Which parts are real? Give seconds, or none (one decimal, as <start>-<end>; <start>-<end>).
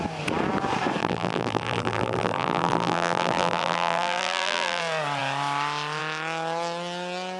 0.0-1.0; 4.8-7.4